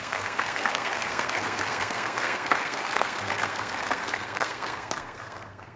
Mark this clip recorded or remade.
remade